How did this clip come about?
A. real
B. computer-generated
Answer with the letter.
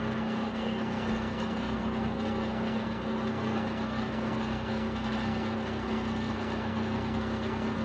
B